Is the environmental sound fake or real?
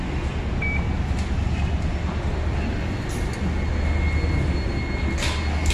real